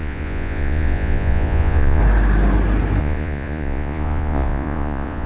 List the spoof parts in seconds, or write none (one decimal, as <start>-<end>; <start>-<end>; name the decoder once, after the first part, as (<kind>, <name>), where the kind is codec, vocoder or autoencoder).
0.0-2.0 (vocoder, Vocos); 3.0-5.3